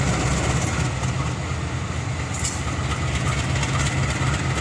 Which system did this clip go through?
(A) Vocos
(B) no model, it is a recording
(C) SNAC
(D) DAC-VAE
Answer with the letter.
B